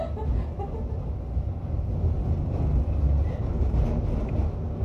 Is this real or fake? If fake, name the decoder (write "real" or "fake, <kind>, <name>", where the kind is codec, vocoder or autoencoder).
real